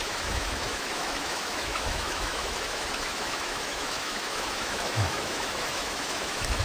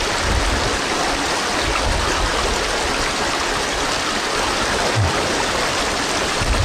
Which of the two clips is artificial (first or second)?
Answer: first